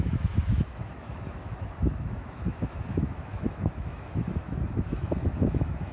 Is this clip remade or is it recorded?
remade